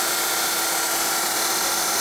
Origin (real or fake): fake